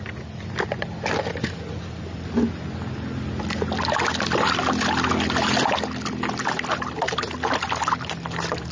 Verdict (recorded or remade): recorded